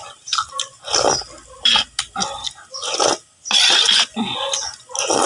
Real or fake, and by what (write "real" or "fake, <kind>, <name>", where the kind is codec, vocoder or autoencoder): real